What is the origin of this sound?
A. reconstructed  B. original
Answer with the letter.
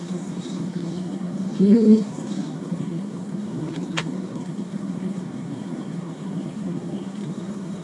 A